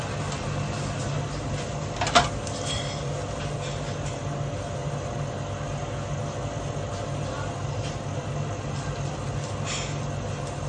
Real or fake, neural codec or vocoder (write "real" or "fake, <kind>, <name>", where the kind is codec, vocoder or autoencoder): real